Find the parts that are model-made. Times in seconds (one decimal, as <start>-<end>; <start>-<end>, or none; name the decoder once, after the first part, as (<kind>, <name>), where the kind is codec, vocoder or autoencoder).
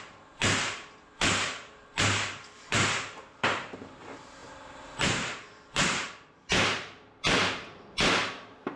0.0-8.8 (vocoder, BigVGAN v2)